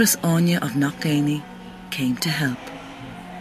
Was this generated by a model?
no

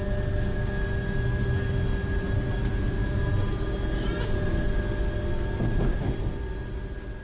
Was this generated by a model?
no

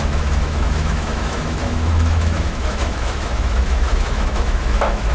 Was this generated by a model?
yes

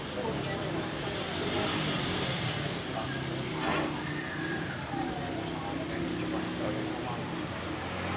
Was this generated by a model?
no